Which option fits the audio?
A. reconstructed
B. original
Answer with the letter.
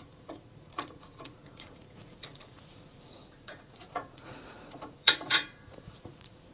A